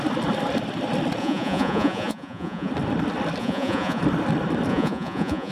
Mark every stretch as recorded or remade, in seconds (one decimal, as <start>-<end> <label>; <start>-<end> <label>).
0.0-1.2 recorded; 1.2-2.7 remade; 2.7-3.4 recorded; 3.4-4.0 remade; 4.0-4.7 recorded; 4.7-5.5 remade